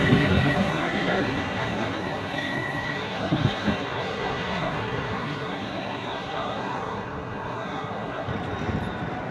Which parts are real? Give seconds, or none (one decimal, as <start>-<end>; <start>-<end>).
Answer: 8.3-9.3